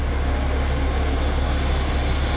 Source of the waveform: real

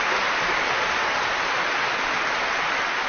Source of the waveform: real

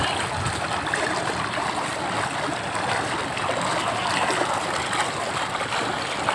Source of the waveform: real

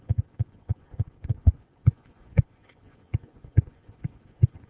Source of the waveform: fake